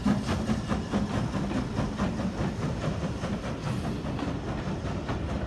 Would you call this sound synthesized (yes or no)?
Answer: no